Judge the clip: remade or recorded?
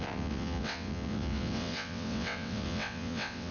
remade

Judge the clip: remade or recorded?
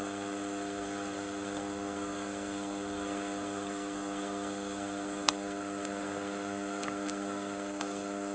remade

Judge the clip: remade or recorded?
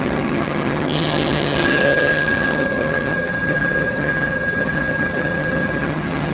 remade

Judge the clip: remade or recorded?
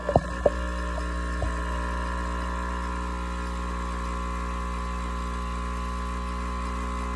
recorded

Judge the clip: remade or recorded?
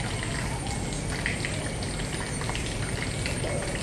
recorded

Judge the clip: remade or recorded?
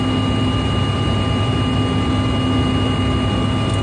recorded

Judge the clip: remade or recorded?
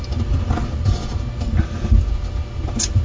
recorded